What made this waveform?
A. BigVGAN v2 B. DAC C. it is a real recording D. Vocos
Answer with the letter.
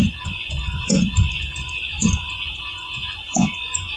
D